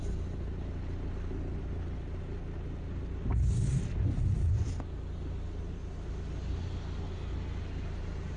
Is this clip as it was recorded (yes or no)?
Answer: yes